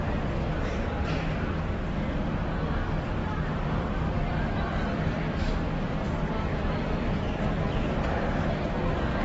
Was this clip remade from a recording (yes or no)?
no